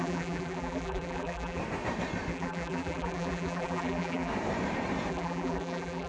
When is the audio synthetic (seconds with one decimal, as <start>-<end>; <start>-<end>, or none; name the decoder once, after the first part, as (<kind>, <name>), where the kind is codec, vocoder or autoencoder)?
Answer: 0.0-1.6 (vocoder, BigVGAN v2); 2.3-4.3; 5.1-6.1